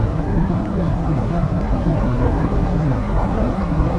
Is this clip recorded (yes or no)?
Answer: no